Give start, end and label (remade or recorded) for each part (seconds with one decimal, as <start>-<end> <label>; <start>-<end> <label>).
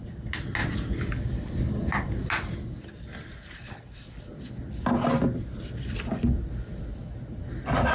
0.0-7.9 recorded